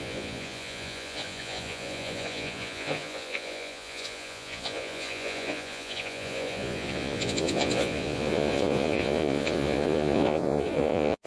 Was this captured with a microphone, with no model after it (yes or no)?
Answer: no